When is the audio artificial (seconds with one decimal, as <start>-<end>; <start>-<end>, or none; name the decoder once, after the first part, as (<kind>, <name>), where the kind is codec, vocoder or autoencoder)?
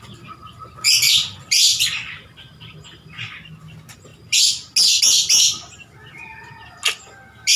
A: 0.0-4.1 (vocoder, BigVGAN v2); 5.3-6.3